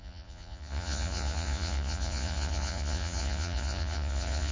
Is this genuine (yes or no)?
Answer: no